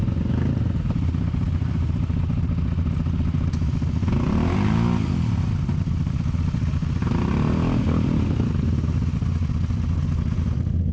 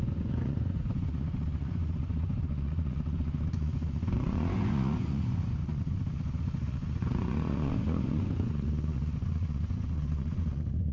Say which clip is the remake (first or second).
second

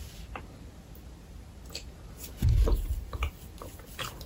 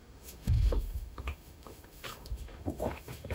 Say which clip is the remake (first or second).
second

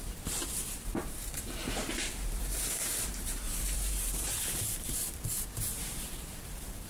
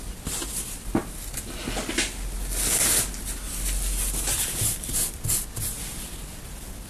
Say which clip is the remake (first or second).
first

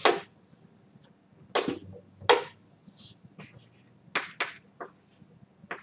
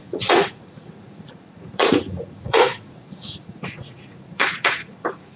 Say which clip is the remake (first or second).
second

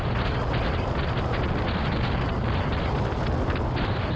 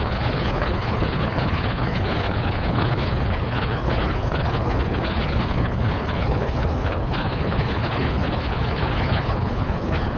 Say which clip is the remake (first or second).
second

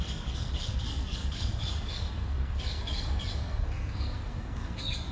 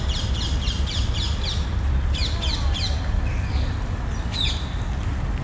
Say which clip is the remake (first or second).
first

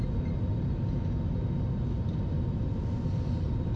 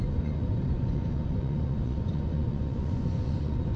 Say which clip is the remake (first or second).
second